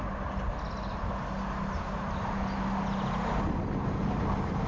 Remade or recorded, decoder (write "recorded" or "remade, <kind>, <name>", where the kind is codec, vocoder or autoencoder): recorded